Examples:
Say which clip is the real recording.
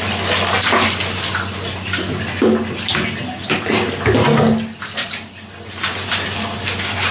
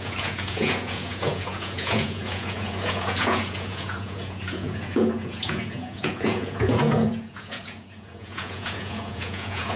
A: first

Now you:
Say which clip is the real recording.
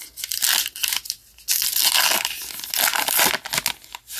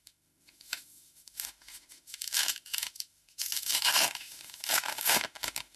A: first